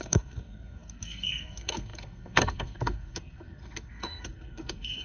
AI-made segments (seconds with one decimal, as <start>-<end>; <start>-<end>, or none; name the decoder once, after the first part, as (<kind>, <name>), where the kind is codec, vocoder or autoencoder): 0.0-5.0 (codec, SNAC)